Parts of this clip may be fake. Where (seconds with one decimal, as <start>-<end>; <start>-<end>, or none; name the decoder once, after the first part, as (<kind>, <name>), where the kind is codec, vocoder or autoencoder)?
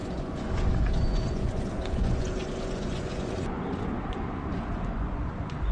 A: 0.0-5.7 (vocoder, Vocos)